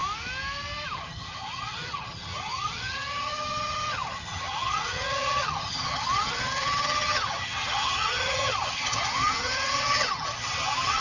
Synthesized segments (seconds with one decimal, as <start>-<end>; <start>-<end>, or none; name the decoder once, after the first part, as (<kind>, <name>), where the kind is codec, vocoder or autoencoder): 0.9-11.0 (vocoder, HiFi-GAN)